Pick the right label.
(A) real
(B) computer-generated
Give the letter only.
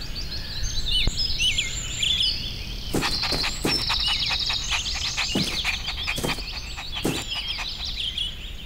A